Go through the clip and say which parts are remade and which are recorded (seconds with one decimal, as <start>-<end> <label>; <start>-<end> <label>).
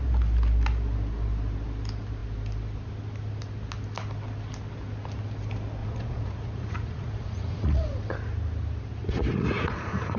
0.0-5.8 recorded; 5.8-7.8 remade; 7.8-9.0 recorded; 9.0-10.2 remade